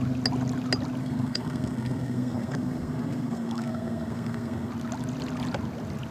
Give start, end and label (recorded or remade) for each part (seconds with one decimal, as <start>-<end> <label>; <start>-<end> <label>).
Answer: 0.0-1.0 recorded; 1.0-4.7 remade; 4.7-6.1 recorded